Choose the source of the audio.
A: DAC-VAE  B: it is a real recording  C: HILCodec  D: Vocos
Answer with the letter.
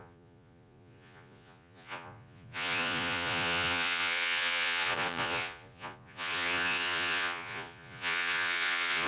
D